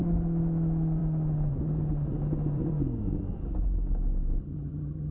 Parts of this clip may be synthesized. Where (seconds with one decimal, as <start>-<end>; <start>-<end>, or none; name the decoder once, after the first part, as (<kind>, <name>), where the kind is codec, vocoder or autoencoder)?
4.4-5.1 (vocoder, HiFi-GAN)